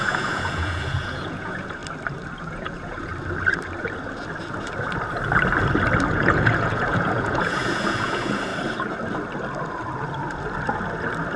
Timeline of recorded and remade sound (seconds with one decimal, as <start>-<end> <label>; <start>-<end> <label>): 0.0-1.8 remade; 1.8-2.4 recorded; 2.4-3.1 remade; 3.1-6.1 recorded; 6.1-8.5 remade; 8.5-11.4 recorded